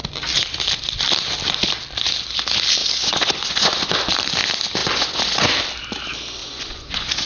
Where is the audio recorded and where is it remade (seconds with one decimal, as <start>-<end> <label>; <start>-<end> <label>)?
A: 0.0-2.8 recorded; 2.8-3.9 remade; 3.9-4.8 recorded; 4.8-5.5 remade; 5.5-6.4 recorded; 6.4-7.3 remade